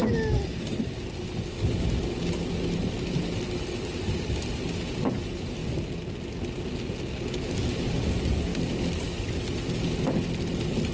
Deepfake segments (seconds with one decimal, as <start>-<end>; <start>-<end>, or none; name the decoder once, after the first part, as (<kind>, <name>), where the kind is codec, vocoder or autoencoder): none

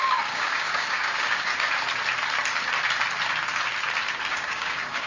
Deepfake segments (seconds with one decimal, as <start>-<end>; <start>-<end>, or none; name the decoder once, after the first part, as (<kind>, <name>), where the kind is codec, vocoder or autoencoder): 0.0-1.5 (codec, DAC); 4.3-5.1